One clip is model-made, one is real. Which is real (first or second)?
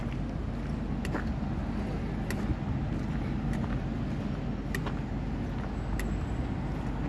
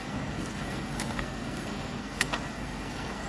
first